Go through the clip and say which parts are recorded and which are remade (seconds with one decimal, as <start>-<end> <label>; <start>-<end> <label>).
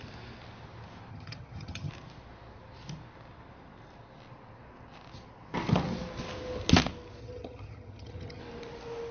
0.0-1.1 recorded; 1.1-1.9 remade; 1.9-7.2 recorded; 7.2-8.4 remade; 8.4-9.1 recorded